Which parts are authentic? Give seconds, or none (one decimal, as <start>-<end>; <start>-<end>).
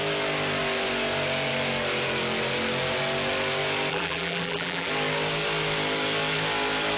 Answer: 0.0-3.9; 4.9-7.0